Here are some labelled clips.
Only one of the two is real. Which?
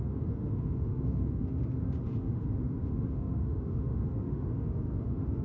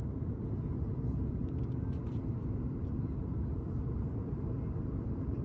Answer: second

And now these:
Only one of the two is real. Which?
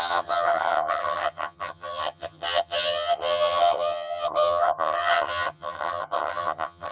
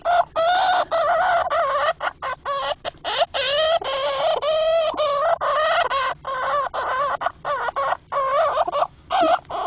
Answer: second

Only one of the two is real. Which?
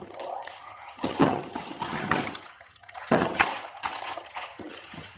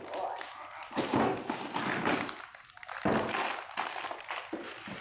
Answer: second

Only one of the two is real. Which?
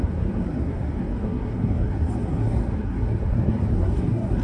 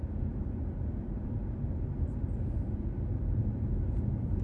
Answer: second